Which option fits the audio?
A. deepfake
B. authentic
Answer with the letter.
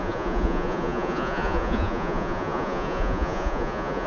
A